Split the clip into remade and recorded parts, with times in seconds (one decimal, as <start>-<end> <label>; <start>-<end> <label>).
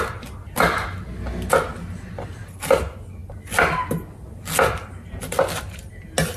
0.0-6.4 recorded